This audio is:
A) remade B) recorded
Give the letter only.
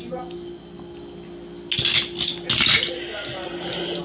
B